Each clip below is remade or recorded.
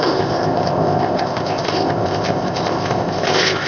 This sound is remade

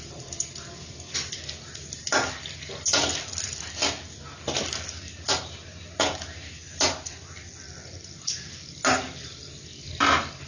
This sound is recorded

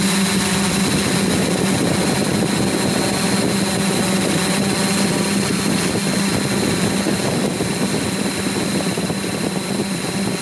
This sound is recorded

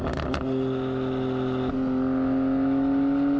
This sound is recorded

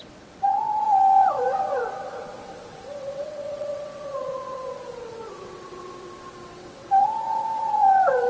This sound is remade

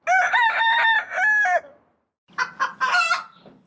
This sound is recorded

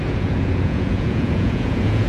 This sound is remade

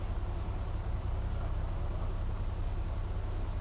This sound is recorded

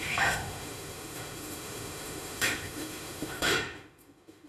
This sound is remade